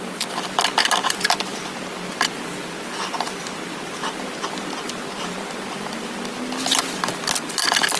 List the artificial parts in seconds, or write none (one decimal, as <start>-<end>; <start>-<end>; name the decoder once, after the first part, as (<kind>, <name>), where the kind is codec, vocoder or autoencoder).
none